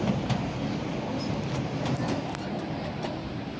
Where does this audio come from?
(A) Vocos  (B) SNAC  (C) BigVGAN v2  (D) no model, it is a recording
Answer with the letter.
D